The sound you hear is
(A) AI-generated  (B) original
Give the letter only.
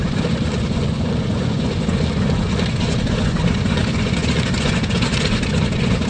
A